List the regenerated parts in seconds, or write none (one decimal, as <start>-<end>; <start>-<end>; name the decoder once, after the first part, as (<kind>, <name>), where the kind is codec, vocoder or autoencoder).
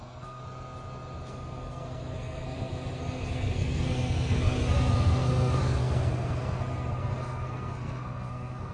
0.0-0.4 (codec, SNAC); 1.3-8.7